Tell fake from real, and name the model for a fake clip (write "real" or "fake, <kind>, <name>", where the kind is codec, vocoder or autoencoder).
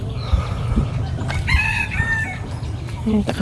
real